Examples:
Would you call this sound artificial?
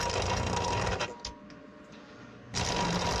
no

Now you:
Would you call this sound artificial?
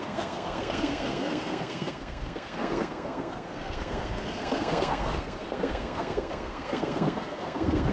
yes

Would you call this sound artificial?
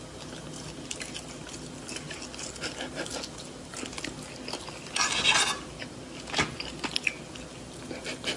no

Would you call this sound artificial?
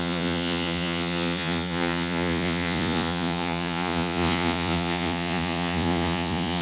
yes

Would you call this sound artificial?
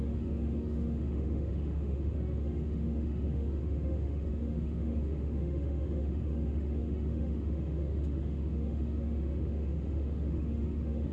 yes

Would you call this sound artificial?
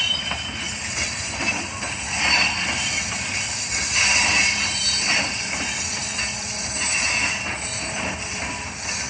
no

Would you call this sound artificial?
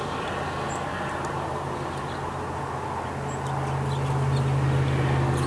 no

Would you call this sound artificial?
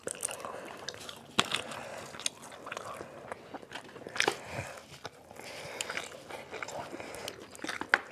no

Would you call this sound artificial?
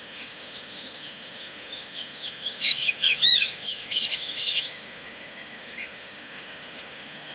yes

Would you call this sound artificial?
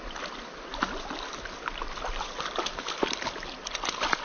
no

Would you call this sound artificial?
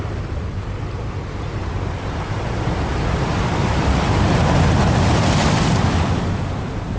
no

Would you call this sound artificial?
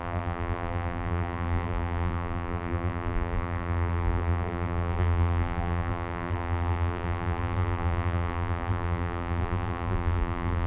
yes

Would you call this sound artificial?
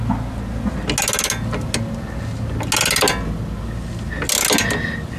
no